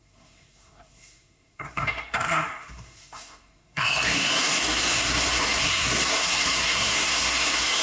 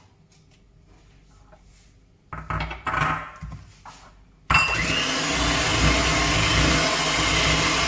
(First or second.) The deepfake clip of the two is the first